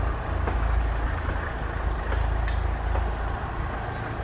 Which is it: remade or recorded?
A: recorded